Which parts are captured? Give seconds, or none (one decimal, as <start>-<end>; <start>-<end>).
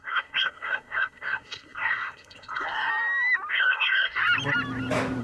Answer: 2.9-3.5; 4.2-5.2